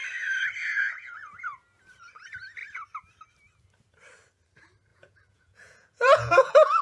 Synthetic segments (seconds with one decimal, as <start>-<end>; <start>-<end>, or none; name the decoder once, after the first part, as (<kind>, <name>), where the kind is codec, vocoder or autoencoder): 0.7-1.4 (vocoder, Vocos); 4.9-6.8